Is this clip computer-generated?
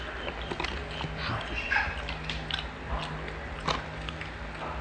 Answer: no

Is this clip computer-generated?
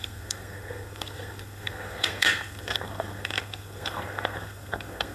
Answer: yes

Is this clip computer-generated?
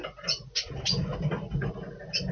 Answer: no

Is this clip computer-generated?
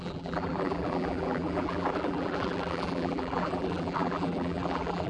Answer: yes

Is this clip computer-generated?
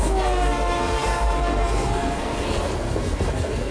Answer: yes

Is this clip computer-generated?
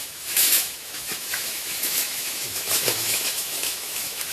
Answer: yes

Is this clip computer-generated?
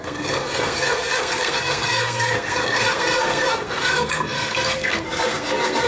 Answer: yes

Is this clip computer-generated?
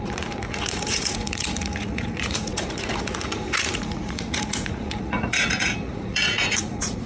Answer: yes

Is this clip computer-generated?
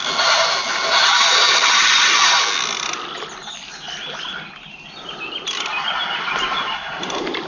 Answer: no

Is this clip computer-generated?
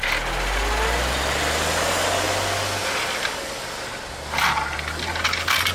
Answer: no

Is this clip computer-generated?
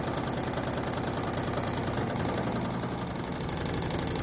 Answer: no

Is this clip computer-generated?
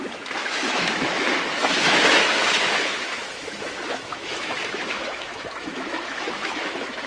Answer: yes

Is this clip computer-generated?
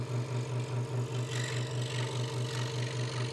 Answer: no